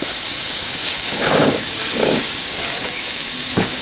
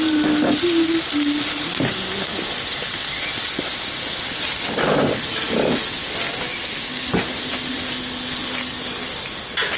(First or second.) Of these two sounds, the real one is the second